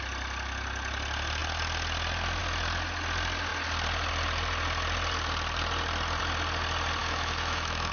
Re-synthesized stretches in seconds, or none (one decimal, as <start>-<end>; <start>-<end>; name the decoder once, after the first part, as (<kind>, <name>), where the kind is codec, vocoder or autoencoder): 7.0-7.9 (autoencoder, DAC-VAE)